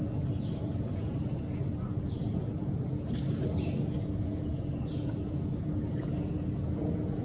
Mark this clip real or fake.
fake